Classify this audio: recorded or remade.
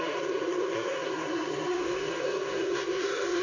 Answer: remade